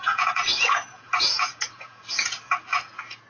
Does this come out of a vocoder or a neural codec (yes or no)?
yes